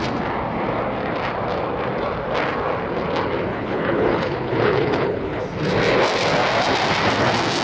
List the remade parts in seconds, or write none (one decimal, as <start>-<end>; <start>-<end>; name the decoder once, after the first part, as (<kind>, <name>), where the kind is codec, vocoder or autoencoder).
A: 3.5-5.4 (codec, HILCodec)